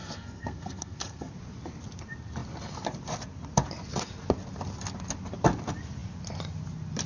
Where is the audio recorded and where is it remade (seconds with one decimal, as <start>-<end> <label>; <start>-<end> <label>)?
0.0-1.3 remade; 1.3-7.1 recorded